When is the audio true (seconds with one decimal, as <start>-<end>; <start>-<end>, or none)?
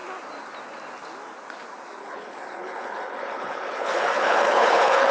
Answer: 0.0-2.0